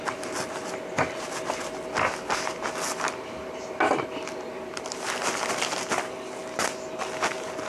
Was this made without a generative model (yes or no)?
yes